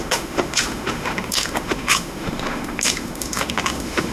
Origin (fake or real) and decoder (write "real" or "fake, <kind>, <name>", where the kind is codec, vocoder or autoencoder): fake, autoencoder, DAC-VAE